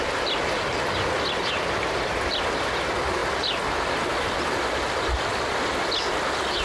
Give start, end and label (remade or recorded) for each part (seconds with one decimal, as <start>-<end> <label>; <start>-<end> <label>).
0.0-6.6 recorded